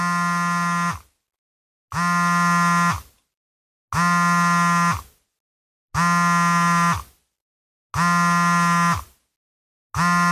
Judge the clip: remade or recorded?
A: recorded